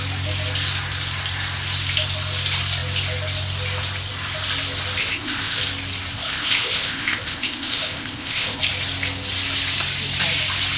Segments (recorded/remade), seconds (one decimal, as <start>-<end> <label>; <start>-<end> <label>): 0.0-5.0 recorded; 5.0-5.6 remade; 5.6-6.1 recorded; 6.1-8.6 remade; 8.6-10.8 recorded